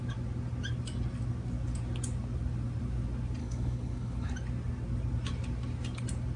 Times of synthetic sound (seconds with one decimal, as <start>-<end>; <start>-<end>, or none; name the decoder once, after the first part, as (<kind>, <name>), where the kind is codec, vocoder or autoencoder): 3.4-4.3 (codec, HILCodec)